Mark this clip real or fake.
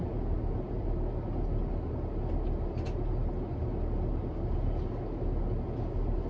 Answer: real